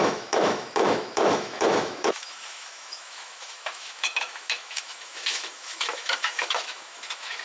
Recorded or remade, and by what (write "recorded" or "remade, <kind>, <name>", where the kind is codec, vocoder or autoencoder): remade, autoencoder, DAC-VAE